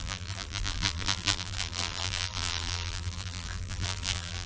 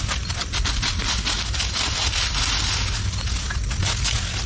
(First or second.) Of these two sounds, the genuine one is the second